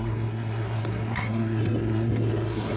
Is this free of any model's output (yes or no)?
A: no